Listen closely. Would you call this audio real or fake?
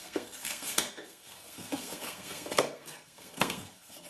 fake